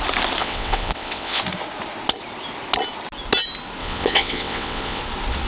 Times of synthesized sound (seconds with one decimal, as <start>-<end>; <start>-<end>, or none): 0.4-1.4; 3.8-5.0